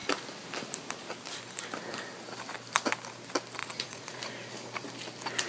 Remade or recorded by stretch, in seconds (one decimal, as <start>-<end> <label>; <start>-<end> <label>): 0.0-3.6 recorded; 3.6-4.2 remade; 4.2-5.5 recorded

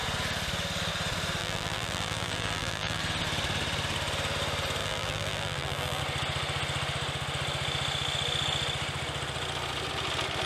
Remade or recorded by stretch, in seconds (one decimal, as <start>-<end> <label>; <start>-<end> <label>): 0.0-1.4 recorded; 1.4-3.0 remade; 3.0-4.8 recorded; 4.8-6.0 remade; 6.0-10.5 recorded

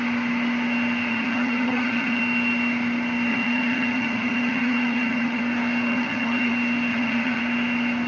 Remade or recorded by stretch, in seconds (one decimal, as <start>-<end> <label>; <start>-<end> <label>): 0.0-1.1 recorded; 1.1-2.2 remade; 2.2-3.3 recorded; 3.3-5.4 remade; 5.4-5.9 recorded; 5.9-6.5 remade; 6.5-6.9 recorded; 6.9-7.4 remade; 7.4-8.1 recorded